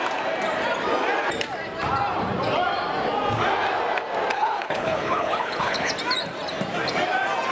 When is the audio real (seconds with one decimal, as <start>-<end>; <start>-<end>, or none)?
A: 0.0-4.3; 5.9-7.5